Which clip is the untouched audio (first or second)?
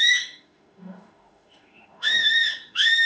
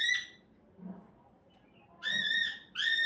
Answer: second